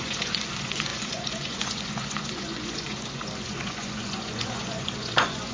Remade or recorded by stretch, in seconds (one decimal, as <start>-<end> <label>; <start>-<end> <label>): 0.0-5.5 remade